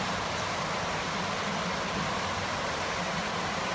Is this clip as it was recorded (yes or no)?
yes